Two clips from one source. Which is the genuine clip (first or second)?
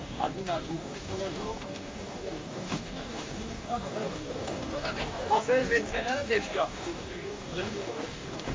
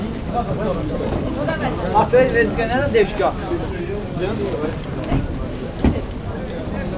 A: second